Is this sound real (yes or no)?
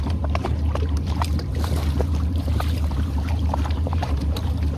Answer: no